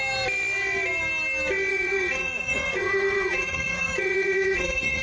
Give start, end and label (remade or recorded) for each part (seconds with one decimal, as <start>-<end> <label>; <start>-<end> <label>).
0.0-1.7 recorded; 1.7-5.0 remade

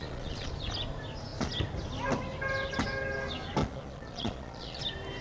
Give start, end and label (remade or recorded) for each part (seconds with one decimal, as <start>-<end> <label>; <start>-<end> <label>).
0.0-0.5 remade; 0.5-3.6 recorded; 3.6-4.8 remade; 4.8-5.2 recorded